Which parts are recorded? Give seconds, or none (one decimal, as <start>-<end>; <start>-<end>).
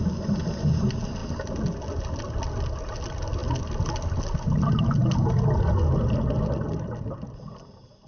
0.0-8.1